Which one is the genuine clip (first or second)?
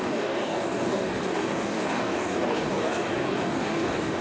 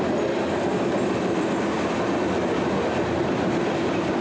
second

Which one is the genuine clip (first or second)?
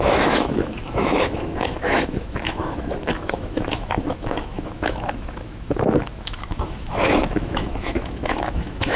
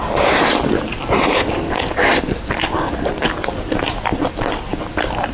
second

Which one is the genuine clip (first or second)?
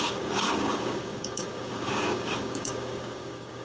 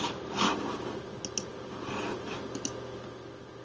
second